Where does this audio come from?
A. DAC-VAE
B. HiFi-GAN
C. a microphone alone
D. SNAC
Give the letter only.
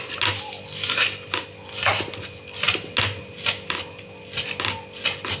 C